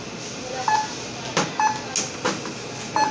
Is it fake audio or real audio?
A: real